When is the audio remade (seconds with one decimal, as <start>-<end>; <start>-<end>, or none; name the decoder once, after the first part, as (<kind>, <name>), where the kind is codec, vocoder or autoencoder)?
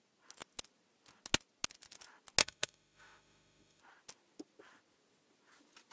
2.4-3.8 (autoencoder, DAC-VAE)